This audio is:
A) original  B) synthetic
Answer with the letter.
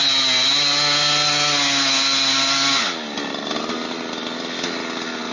A